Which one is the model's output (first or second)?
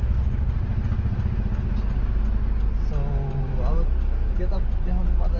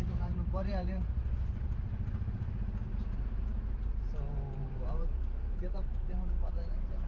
second